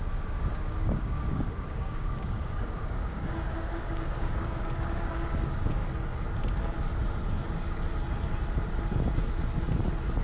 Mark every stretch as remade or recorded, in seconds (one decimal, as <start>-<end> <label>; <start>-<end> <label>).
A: 0.0-5.8 remade; 5.8-10.2 recorded